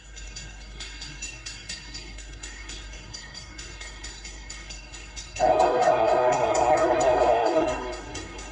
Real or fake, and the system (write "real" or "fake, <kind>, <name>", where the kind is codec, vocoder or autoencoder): fake, codec, SNAC